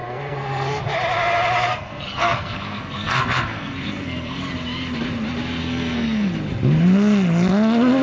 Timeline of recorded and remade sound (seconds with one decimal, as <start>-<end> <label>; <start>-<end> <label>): 0.0-0.8 remade; 0.8-1.7 recorded; 1.7-4.4 remade; 4.4-5.6 recorded; 5.6-6.3 remade; 6.3-8.0 recorded